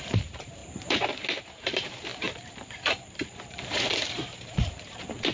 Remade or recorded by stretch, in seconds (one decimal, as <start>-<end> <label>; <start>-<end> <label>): 0.0-0.6 remade; 0.6-1.4 recorded; 1.4-5.3 remade